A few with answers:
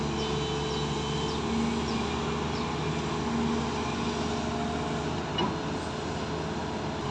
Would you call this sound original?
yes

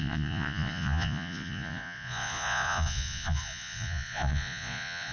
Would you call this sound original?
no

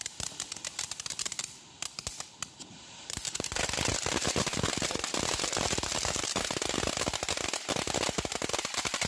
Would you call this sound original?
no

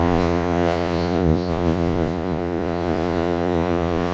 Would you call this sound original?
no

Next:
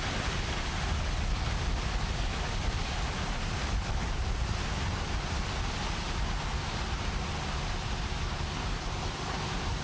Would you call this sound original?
yes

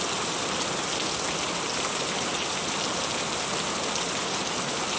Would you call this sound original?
no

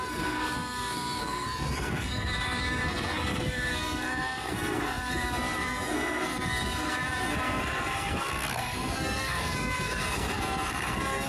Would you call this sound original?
no